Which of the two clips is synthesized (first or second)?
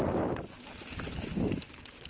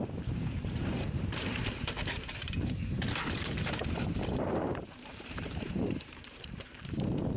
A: second